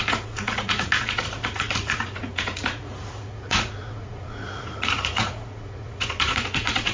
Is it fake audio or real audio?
fake